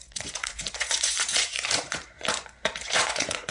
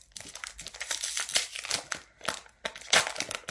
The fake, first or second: first